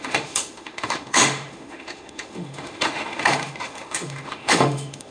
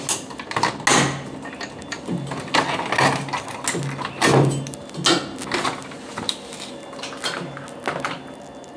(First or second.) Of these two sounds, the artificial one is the first